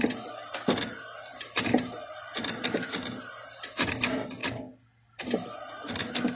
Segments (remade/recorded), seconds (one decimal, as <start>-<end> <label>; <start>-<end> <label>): 0.0-6.4 recorded